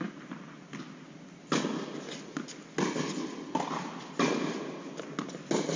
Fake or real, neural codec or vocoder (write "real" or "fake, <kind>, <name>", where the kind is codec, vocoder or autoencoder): real